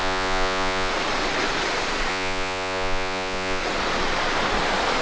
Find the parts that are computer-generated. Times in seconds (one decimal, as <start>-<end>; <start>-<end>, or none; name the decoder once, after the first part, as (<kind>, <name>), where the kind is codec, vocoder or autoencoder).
0.0-0.9 (vocoder, Vocos); 2.1-3.6

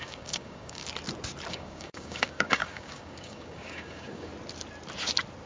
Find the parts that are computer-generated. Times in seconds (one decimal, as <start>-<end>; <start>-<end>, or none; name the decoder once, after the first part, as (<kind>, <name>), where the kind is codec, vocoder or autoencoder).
0.0-0.8 (codec, DAC); 1.5-4.3

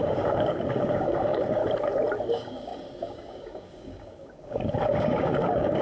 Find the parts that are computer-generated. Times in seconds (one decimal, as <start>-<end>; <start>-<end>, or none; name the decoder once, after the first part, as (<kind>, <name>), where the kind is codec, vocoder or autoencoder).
0.0-1.6 (codec, DAC); 2.3-5.8

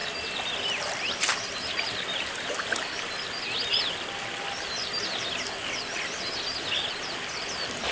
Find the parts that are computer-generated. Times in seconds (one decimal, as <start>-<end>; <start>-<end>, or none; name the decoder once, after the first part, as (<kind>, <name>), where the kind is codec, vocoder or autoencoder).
none

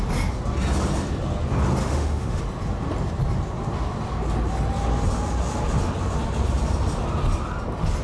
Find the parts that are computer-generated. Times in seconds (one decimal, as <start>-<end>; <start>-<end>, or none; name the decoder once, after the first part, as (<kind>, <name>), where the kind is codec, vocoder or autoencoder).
1.8-2.4 (autoencoder, DAC-VAE)

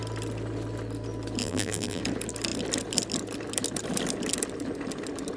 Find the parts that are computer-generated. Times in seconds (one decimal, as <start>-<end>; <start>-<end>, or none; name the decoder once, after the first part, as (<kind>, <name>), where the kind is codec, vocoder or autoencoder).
1.4-2.0 (vocoder, BigVGAN v2)

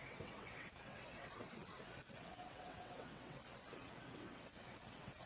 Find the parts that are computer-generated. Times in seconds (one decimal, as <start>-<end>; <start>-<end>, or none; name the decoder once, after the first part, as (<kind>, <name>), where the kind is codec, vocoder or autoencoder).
0.0-5.3 (vocoder, WaveNeXt)